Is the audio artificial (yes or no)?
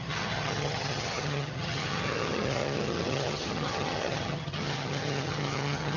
yes